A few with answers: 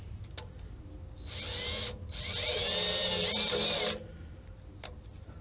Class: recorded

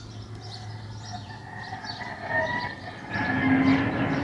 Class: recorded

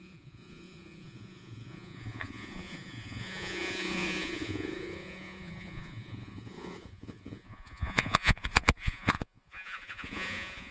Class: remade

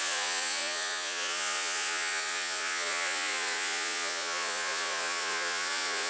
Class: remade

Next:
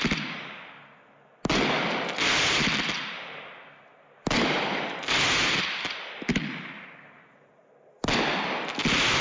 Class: recorded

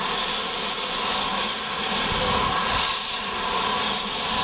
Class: recorded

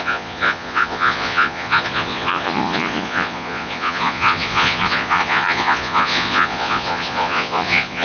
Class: remade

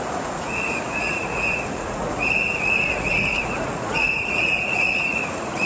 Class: remade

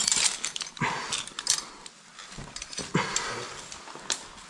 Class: recorded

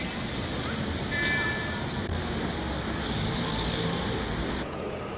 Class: recorded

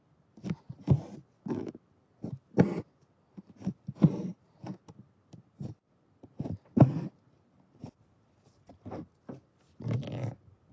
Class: recorded